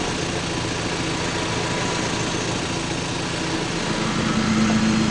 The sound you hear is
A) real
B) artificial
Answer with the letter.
A